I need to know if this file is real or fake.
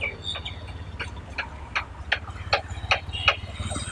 real